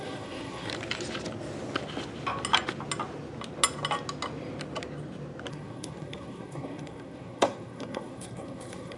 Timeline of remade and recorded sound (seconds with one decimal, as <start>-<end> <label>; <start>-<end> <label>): 0.0-0.7 remade; 0.7-5.5 recorded; 5.5-9.0 remade